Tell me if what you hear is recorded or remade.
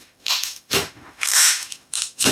remade